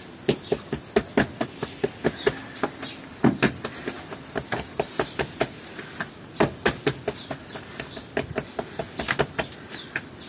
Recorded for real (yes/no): yes